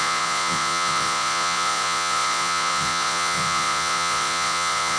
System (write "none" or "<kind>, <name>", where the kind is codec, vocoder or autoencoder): vocoder, Vocos